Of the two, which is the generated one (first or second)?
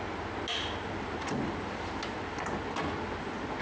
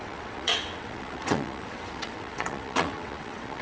second